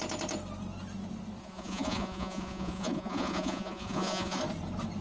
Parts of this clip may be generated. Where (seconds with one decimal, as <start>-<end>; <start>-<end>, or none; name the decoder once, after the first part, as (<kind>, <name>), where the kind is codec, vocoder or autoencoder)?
1.4-4.4 (vocoder, Vocos)